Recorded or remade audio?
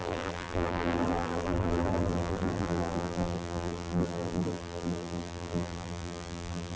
remade